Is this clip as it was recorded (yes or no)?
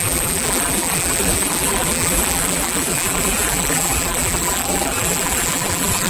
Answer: no